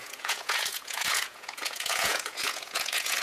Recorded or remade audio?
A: remade